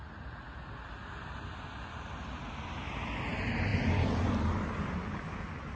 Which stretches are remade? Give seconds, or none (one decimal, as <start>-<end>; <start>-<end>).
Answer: none